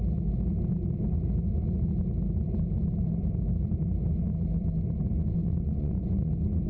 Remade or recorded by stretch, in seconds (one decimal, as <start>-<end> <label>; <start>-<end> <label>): 0.0-5.4 recorded; 5.4-6.3 remade; 6.3-6.7 recorded